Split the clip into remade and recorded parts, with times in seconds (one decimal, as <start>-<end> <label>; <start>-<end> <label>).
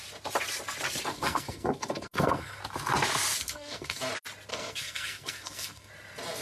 0.0-1.1 recorded; 1.1-2.6 remade; 2.6-3.4 recorded; 3.4-4.0 remade; 4.0-4.5 recorded; 4.5-5.9 remade; 5.9-6.4 recorded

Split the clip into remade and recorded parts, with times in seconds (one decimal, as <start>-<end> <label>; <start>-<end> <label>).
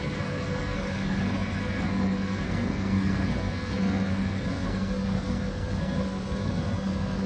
0.0-7.3 remade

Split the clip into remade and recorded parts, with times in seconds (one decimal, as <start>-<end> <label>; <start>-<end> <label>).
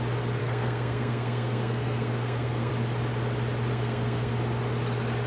0.0-0.4 recorded; 0.4-2.7 remade; 2.7-3.7 recorded; 3.7-4.3 remade; 4.3-5.3 recorded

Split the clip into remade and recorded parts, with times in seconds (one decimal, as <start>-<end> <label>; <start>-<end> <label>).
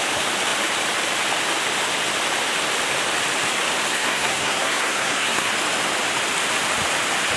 0.0-3.9 recorded; 3.9-5.5 remade; 5.5-7.4 recorded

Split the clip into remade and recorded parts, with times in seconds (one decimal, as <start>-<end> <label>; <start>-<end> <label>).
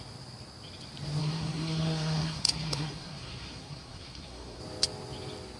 0.0-1.2 recorded; 1.2-4.6 remade; 4.6-5.6 recorded